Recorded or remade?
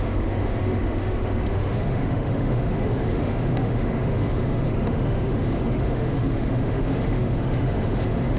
remade